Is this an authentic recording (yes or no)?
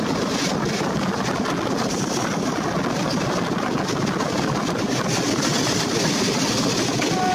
yes